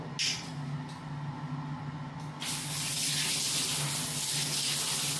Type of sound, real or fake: real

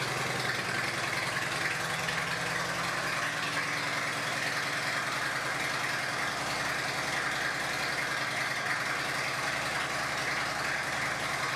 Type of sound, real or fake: real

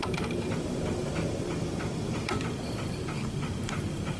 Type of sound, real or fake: fake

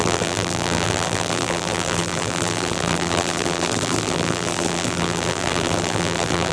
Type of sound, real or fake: fake